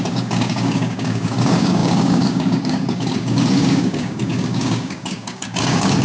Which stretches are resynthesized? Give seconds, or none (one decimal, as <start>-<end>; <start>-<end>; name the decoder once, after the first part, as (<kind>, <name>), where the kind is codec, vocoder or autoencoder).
0.0-6.0 (codec, DAC)